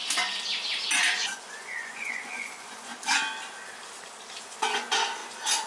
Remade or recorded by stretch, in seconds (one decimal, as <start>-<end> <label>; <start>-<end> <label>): 0.0-1.0 recorded; 1.0-2.9 remade; 2.9-4.4 recorded; 4.4-5.7 remade

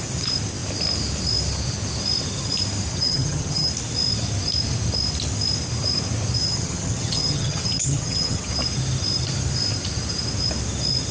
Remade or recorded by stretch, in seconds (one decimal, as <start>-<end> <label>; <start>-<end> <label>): 0.0-2.9 recorded; 2.9-3.7 remade; 3.7-6.4 recorded; 6.4-8.5 remade; 8.5-11.1 recorded

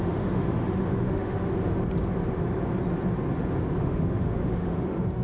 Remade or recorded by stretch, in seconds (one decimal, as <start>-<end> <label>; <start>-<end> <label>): 0.0-1.5 remade; 1.5-3.8 recorded; 3.8-5.2 remade

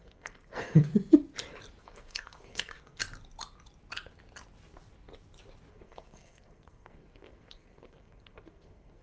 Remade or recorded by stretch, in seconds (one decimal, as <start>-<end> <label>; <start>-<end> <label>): 0.0-0.9 remade; 0.9-1.8 recorded; 1.8-3.0 remade; 3.0-5.7 recorded; 5.7-9.0 remade

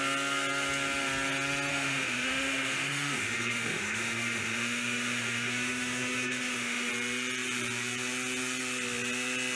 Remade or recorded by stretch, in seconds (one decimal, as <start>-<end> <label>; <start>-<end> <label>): 0.0-1.7 recorded; 1.7-6.9 remade; 6.9-9.6 recorded

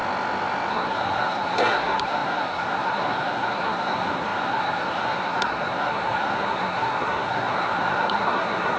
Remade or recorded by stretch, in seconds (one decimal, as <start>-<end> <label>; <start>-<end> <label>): 0.0-0.7 recorded; 0.7-8.8 remade